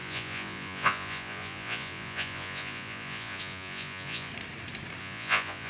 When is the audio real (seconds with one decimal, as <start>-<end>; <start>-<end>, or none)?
4.3-5.0